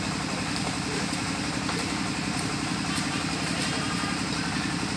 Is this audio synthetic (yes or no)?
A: yes